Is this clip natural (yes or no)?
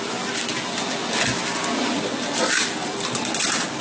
yes